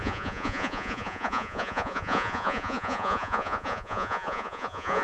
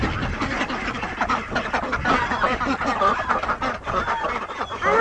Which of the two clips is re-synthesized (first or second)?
first